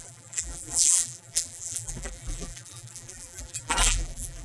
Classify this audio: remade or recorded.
remade